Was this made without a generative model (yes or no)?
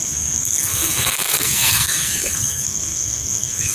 no